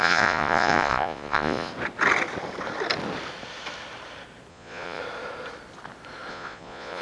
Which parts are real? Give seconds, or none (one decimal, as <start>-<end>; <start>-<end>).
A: 1.7-4.5; 5.0-6.3